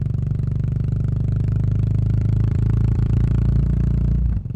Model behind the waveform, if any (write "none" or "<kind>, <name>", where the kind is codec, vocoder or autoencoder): vocoder, BigVGAN v2